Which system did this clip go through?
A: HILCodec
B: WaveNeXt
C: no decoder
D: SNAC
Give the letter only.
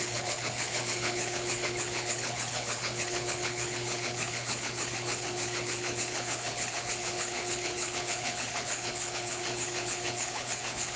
A